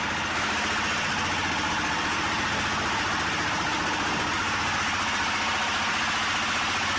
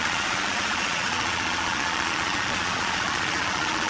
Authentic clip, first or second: first